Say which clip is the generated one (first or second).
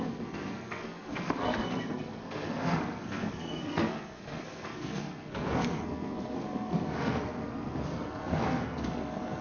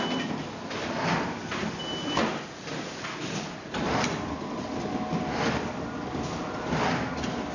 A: first